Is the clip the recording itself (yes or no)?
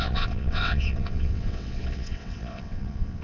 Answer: no